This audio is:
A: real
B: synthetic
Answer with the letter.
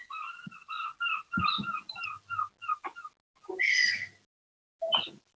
A